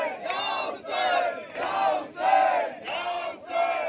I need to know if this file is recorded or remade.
recorded